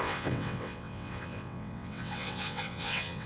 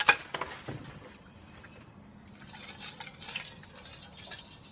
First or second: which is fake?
first